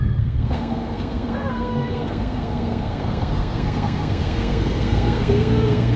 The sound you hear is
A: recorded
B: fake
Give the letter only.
B